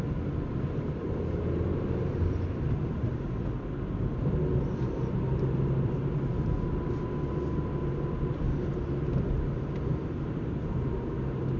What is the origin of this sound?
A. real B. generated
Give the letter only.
A